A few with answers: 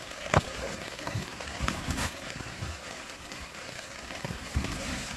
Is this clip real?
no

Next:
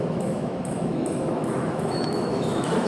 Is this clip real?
no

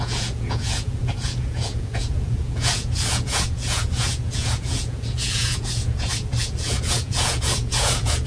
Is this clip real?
no